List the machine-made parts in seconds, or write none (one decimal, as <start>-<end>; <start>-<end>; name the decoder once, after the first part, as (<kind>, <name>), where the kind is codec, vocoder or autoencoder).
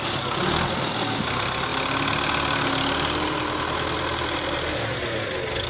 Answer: none